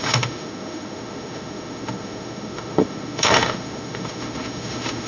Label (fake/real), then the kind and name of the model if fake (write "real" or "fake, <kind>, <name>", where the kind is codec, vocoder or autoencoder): fake, autoencoder, DAC-VAE